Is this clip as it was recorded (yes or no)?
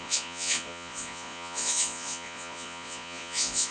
no